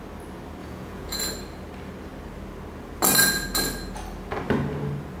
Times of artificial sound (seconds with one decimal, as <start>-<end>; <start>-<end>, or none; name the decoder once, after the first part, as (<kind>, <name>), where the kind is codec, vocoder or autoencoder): 0.6-1.2 (vocoder, Vocos)